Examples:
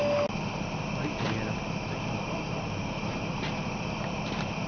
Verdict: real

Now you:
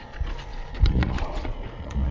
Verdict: fake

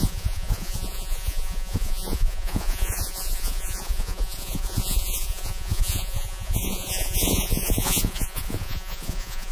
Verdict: fake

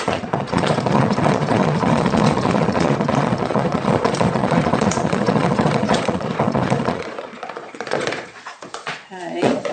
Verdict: fake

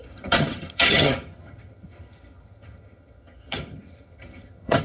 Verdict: fake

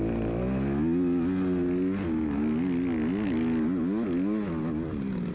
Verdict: real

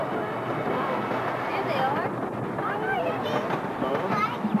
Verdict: real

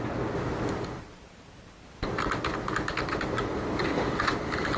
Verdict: real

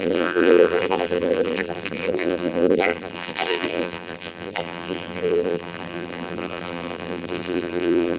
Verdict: fake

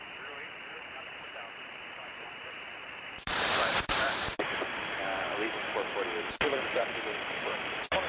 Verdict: fake